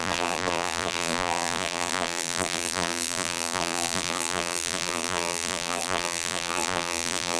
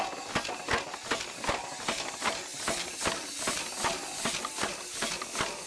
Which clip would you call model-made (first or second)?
first